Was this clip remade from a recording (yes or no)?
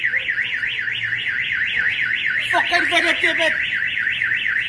yes